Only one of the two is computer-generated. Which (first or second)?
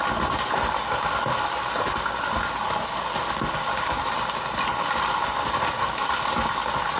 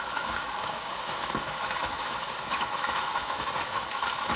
second